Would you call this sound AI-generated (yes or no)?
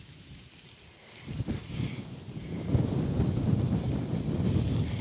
yes